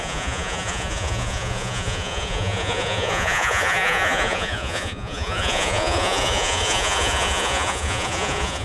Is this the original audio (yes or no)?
no